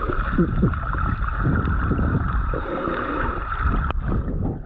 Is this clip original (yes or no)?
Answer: yes